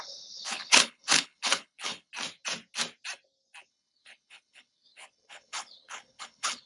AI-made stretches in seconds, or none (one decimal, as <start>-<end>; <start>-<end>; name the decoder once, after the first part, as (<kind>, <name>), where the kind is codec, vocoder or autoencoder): 0.0-2.1 (codec, HILCodec); 3.7-6.7